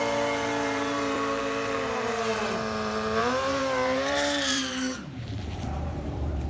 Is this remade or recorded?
remade